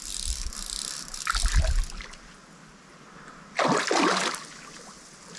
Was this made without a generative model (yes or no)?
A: yes